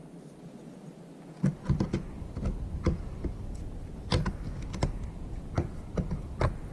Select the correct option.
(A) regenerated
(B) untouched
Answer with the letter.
B